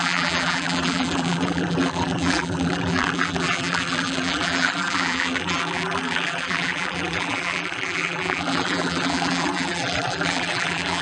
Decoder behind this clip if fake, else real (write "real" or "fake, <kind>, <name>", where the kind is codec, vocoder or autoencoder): fake, vocoder, BigVGAN v2